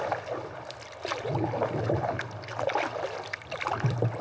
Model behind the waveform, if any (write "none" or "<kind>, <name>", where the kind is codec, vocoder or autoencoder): none